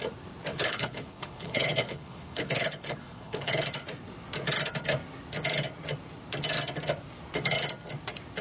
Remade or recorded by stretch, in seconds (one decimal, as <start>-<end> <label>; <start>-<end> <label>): 0.0-0.5 recorded; 0.5-3.7 remade; 3.7-8.4 recorded